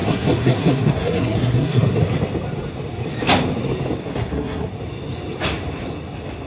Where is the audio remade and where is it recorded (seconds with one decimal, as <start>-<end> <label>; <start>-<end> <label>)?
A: 0.0-2.0 remade; 2.0-4.0 recorded; 4.0-4.7 remade; 4.7-6.5 recorded